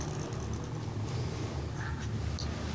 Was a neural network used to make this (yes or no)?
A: no